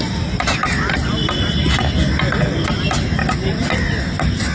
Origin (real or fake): real